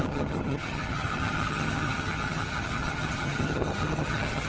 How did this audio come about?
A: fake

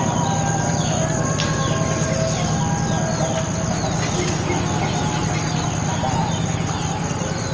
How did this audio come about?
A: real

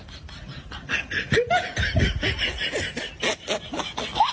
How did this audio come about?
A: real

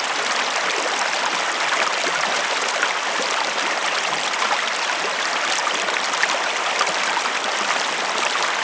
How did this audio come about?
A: real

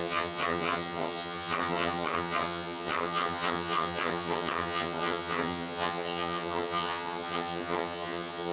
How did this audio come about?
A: fake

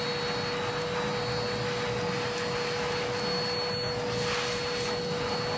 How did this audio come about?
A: real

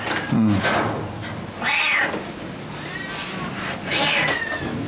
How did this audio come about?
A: real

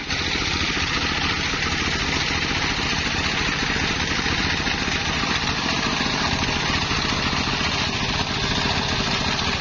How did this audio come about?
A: real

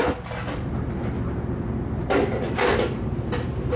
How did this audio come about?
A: real